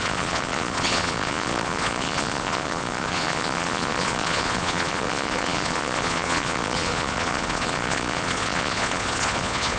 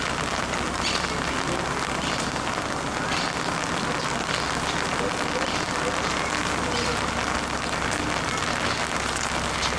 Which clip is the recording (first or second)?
second